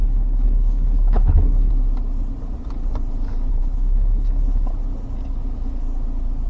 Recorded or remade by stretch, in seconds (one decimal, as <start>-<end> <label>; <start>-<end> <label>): 0.0-1.7 remade; 1.7-3.5 recorded; 3.5-4.7 remade; 4.7-6.5 recorded